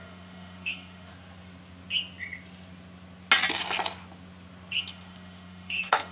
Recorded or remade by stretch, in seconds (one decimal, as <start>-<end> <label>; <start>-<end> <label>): 0.0-1.1 remade; 1.1-4.8 recorded; 4.8-6.1 remade